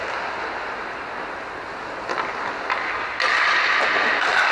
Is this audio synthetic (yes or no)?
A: no